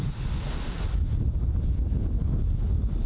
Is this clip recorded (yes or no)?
yes